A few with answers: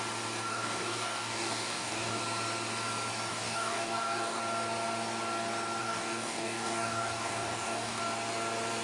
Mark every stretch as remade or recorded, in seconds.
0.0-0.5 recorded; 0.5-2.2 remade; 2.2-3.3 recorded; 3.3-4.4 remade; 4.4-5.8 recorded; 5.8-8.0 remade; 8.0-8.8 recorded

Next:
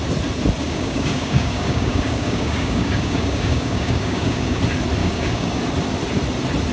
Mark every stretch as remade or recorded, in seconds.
0.0-0.6 recorded; 0.6-4.6 remade; 4.6-5.0 recorded; 5.0-5.6 remade; 5.6-6.7 recorded

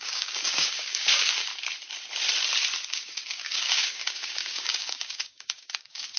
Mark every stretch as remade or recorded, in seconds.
0.0-1.5 remade; 1.5-2.9 recorded; 2.9-6.2 remade